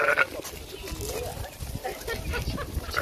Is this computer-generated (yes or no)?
no